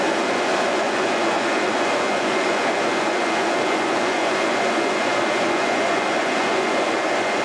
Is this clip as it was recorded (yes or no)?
no